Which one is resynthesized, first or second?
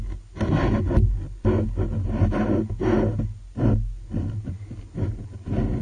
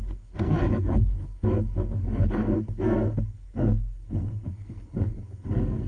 second